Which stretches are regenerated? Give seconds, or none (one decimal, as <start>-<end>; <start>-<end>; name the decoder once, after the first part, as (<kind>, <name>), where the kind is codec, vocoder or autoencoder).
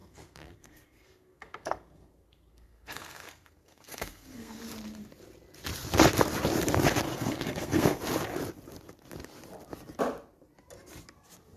0.0-4.6 (codec, SNAC); 7.1-8.0